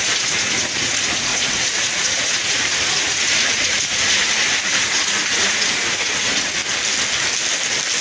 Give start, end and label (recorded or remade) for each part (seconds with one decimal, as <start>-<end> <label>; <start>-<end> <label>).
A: 0.0-6.6 remade; 6.6-8.0 recorded